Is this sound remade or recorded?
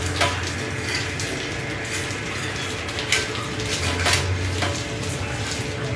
recorded